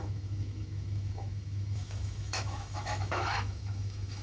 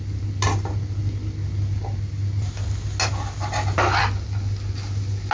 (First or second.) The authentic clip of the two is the second